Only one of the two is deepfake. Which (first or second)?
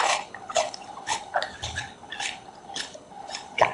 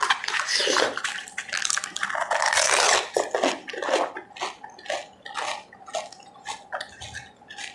first